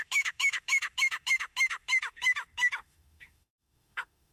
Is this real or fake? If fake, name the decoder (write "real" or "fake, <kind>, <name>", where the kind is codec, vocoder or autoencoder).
fake, autoencoder, DAC-VAE